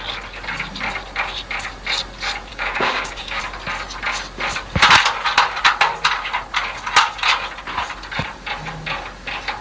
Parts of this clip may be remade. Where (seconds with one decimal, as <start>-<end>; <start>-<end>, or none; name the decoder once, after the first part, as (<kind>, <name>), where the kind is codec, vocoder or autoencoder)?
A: 2.5-3.4 (codec, DAC)